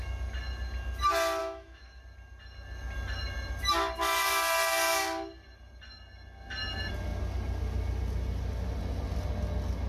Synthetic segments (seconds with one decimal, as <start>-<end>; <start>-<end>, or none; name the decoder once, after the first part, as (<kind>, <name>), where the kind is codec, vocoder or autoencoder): 1.4-2.0 (autoencoder, DAC-VAE)

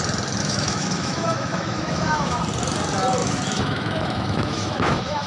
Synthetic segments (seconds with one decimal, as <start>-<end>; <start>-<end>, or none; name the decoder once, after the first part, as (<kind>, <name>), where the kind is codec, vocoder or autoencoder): 0.4-2.4 (autoencoder, DAC-VAE); 3.2-5.3